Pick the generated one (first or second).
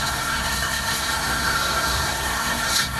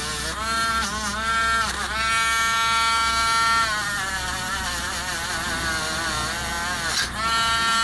first